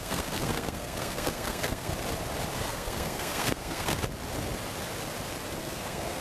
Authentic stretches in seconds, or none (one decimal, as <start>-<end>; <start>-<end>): 1.9-2.6; 3.9-5.6